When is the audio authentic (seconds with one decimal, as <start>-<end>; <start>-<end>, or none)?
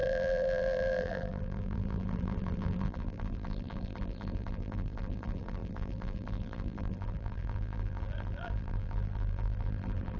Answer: none